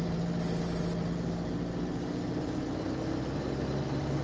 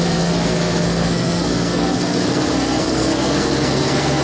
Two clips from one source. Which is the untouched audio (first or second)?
first